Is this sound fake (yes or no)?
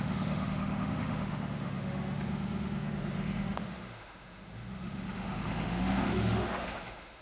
yes